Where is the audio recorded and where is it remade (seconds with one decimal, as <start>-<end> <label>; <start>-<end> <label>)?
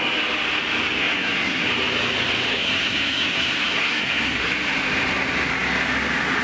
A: 0.0-1.0 recorded; 1.0-1.7 remade; 1.7-2.5 recorded; 2.5-4.5 remade; 4.5-6.4 recorded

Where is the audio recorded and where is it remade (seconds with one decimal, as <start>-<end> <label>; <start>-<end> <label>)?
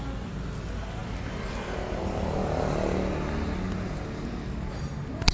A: 0.0-5.3 recorded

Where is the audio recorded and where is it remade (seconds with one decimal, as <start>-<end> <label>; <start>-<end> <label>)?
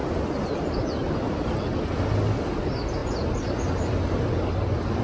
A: 0.0-5.0 recorded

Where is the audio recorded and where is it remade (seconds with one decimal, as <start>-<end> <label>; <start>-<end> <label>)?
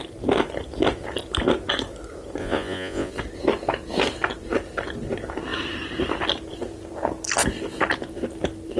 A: 0.0-2.4 recorded; 2.4-3.1 remade; 3.1-8.8 recorded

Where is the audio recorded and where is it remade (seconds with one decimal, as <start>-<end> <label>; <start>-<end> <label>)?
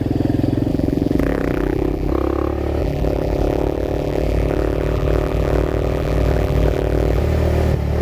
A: 0.0-0.7 recorded; 0.7-2.1 remade; 2.1-2.8 recorded; 2.8-7.2 remade; 7.2-8.0 recorded